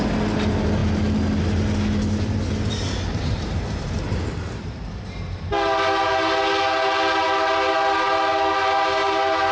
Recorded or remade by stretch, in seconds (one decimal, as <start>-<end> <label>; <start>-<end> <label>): 0.0-3.1 recorded; 3.1-5.5 remade; 5.5-9.5 recorded